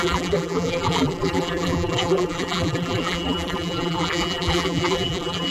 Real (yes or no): no